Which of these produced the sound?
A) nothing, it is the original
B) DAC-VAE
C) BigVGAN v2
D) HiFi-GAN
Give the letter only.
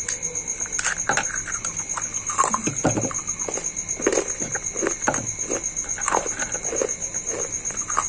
A